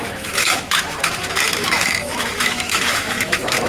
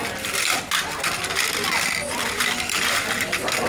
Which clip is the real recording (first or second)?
second